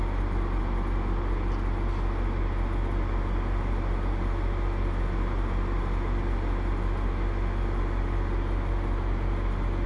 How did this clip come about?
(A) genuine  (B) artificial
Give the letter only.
A